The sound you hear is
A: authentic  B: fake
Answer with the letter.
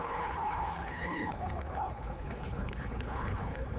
B